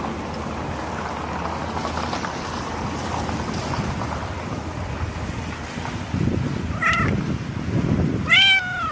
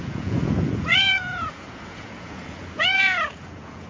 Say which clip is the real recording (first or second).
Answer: first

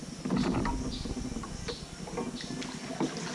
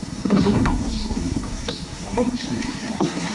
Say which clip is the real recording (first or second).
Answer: first